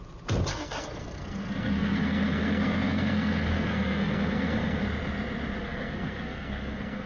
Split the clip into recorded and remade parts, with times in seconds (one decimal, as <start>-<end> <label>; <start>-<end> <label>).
0.0-0.5 recorded; 0.5-4.8 remade; 4.8-5.6 recorded; 5.6-7.1 remade